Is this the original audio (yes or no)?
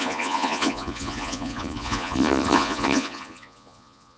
no